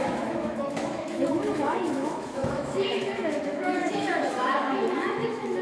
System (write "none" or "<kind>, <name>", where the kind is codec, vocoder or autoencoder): autoencoder, DAC-VAE